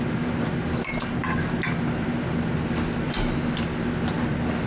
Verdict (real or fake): real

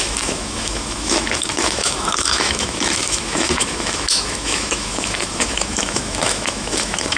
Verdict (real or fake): fake